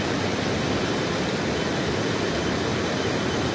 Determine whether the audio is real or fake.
real